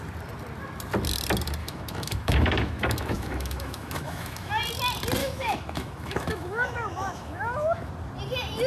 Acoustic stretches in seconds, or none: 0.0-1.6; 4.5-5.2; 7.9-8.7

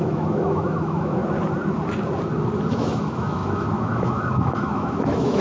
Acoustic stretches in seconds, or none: 1.2-2.7